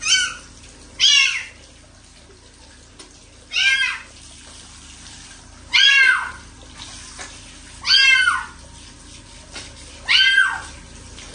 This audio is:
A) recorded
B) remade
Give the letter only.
A